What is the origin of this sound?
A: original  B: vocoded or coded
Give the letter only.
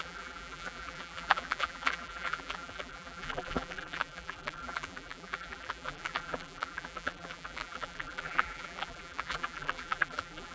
B